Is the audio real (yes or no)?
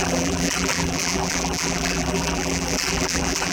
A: no